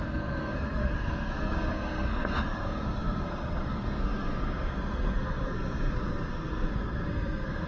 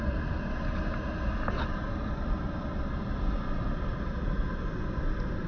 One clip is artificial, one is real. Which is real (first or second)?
second